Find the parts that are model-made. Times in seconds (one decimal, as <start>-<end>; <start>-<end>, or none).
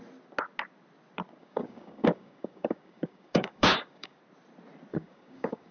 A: 1.4-4.2; 4.9-5.7